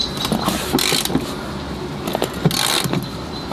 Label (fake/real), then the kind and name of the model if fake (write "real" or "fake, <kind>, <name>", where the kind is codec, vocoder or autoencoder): real